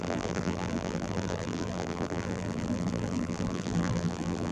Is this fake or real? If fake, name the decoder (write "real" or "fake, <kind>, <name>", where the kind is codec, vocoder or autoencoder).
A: fake, vocoder, BigVGAN v2